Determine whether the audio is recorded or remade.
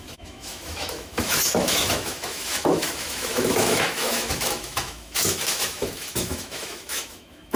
remade